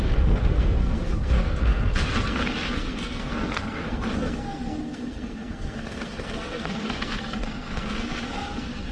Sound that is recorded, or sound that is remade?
remade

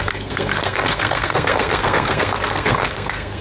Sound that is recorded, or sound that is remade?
remade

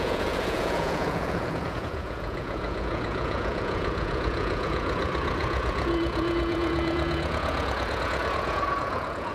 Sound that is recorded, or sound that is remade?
remade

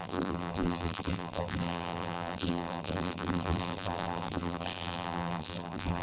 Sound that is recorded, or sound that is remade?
remade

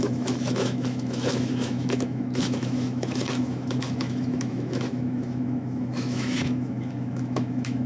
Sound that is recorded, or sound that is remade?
remade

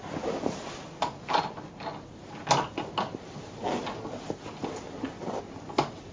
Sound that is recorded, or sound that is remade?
recorded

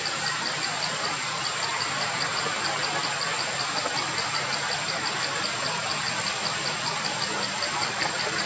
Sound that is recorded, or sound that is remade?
recorded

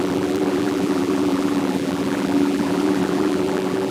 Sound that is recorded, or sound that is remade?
remade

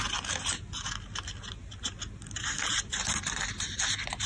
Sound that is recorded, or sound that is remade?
recorded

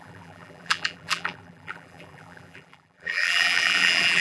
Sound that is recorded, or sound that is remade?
remade